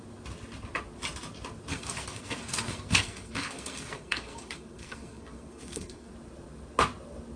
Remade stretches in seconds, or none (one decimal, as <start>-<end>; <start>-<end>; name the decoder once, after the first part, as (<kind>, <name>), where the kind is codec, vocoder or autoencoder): 1.7-6.1 (codec, SNAC)